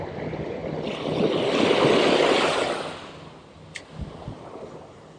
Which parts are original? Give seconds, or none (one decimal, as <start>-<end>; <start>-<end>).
0.0-5.2